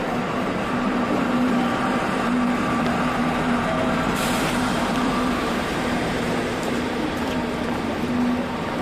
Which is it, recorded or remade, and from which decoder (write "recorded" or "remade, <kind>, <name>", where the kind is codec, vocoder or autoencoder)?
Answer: remade, vocoder, BigVGAN v2